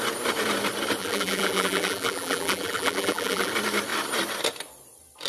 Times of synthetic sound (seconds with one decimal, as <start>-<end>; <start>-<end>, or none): 1.0-3.5